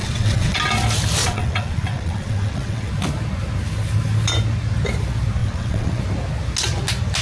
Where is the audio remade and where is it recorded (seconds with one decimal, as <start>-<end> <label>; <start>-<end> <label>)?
0.0-0.6 remade; 0.6-1.2 recorded; 1.2-2.9 remade; 2.9-5.4 recorded; 5.4-6.0 remade; 6.0-7.2 recorded